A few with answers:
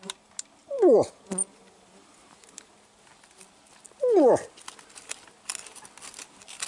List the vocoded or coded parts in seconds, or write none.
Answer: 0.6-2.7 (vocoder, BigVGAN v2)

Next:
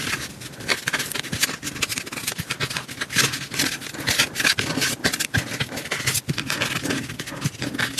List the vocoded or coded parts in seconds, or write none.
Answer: none

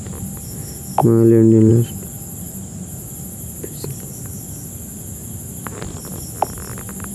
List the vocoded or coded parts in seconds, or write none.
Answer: none

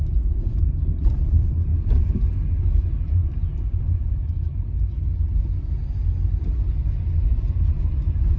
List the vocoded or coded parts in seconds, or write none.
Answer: 0.0-1.7 (vocoder, BigVGAN v2); 2.7-4.6; 7.3-8.4